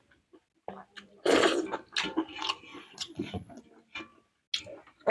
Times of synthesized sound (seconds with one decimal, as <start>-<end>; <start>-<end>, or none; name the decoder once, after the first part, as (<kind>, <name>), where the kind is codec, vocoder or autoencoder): 2.7-3.6 (vocoder, Vocos)